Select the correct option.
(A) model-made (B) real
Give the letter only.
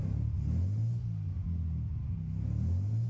B